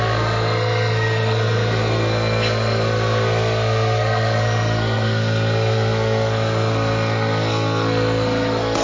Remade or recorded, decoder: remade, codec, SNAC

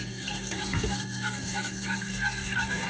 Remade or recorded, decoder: remade, codec, SNAC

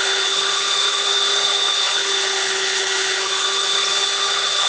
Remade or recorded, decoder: remade, codec, HILCodec